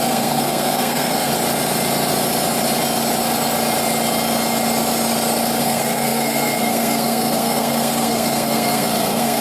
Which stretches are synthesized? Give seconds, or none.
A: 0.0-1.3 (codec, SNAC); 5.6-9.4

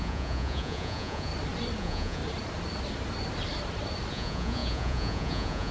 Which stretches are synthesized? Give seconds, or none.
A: 0.0-1.3 (vocoder, Vocos); 1.8-2.2; 4.1-5.7